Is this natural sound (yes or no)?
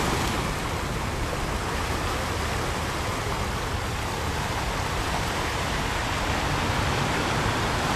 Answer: yes